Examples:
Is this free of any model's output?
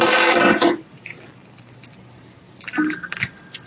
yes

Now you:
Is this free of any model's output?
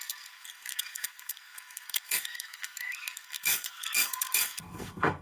no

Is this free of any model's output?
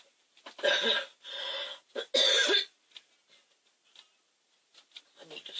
yes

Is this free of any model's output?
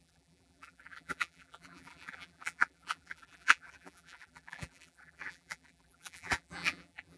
no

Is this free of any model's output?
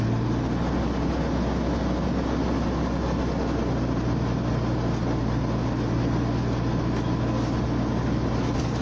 yes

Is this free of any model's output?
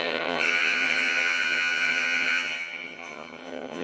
no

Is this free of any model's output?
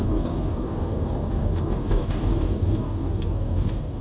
no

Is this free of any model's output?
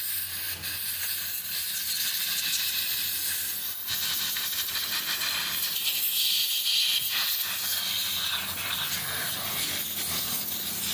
yes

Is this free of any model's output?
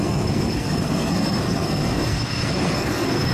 no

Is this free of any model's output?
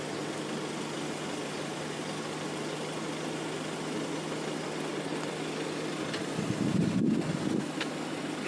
yes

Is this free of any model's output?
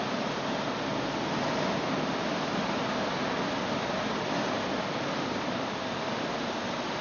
yes